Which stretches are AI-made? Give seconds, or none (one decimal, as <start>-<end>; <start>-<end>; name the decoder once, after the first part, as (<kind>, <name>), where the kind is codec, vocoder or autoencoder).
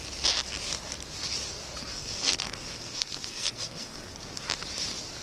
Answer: 1.9-4.1 (codec, SNAC)